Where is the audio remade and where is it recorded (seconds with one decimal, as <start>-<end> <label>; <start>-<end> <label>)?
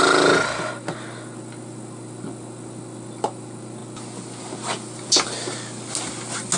0.0-6.6 recorded